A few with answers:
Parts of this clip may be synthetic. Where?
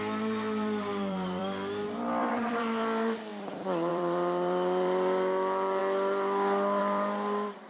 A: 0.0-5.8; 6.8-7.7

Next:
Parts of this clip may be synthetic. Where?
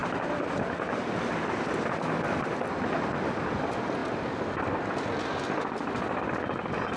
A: 0.0-2.6; 4.0-4.8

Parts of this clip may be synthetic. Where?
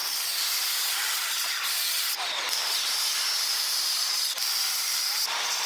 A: 0.0-1.0; 4.0-5.7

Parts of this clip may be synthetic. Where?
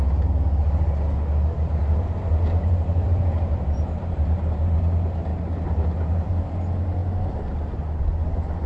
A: 2.9-4.8